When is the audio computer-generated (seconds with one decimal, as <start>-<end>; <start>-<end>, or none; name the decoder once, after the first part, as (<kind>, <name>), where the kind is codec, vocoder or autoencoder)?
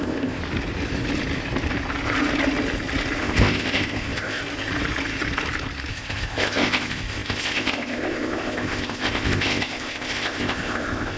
0.0-0.4 (codec, ZipCodec); 3.2-4.4; 5.9-11.2